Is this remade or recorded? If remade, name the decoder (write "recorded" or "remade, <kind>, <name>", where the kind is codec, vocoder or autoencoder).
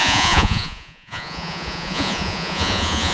remade, vocoder, Vocos